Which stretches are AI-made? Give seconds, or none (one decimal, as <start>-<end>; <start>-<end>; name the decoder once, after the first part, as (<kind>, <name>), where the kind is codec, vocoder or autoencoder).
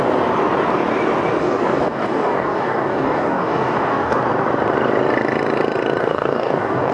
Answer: 1.4-4.2 (codec, DAC); 6.0-6.9